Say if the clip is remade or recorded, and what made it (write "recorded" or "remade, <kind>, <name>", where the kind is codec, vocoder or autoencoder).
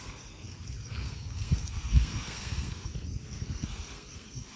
remade, codec, SNAC